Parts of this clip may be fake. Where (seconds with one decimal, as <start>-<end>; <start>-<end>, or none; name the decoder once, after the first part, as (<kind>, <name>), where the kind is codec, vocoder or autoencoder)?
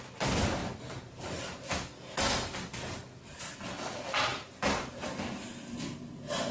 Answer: none